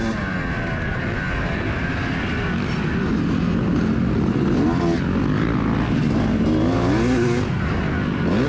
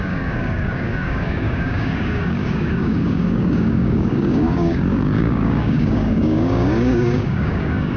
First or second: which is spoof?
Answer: second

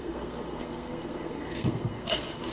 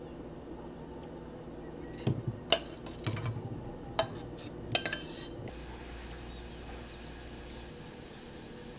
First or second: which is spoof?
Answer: first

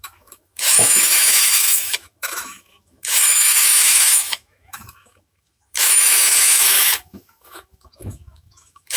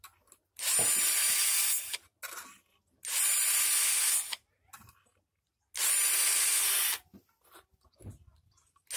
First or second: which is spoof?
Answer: first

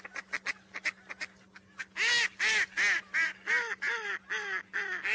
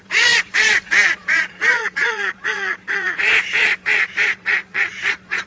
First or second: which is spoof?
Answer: second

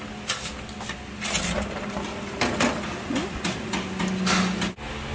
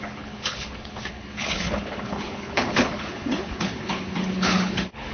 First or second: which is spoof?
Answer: second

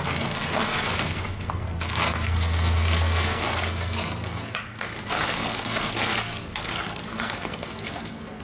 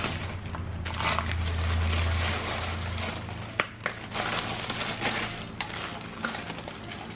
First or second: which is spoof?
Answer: first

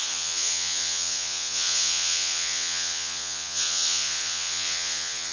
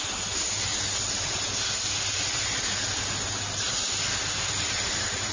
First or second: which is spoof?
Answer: first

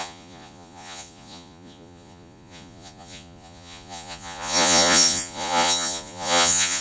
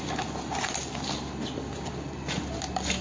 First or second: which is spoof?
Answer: first